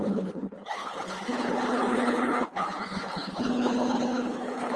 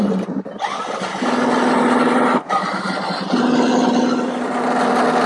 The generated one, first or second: first